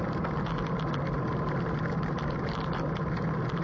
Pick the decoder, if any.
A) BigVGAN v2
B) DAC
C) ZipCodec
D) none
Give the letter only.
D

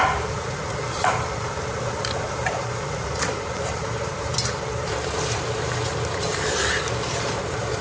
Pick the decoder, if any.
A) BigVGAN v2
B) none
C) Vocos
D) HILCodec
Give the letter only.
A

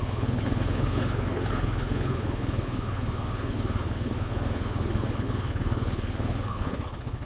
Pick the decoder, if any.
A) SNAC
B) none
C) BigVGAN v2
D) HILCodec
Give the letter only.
D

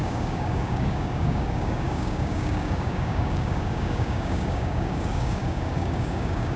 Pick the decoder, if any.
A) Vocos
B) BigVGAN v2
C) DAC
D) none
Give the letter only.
C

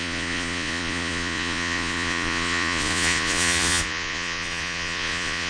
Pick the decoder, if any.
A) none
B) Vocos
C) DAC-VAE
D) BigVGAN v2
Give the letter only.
B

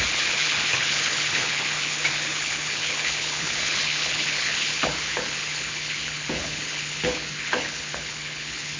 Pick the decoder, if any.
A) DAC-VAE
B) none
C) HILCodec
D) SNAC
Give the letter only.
C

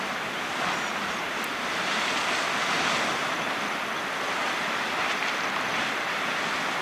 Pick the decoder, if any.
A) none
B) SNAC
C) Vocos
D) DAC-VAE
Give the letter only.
A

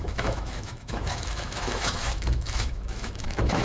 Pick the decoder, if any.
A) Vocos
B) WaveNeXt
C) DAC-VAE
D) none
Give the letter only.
C